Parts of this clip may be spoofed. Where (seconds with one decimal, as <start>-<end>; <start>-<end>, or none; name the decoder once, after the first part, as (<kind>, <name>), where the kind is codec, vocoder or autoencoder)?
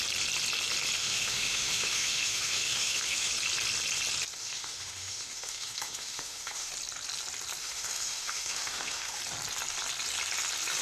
1.0-3.3 (autoencoder, DAC-VAE); 4.3-6.7; 7.6-9.2